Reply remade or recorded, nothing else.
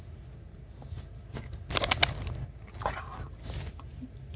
recorded